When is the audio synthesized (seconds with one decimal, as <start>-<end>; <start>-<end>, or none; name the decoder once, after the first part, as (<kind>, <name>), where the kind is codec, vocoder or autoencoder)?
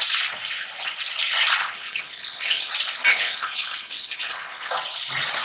1.6-2.7 (codec, HILCodec); 3.1-4.7